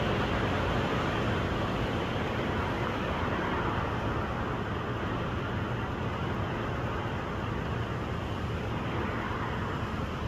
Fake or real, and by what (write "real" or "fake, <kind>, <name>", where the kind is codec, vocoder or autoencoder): real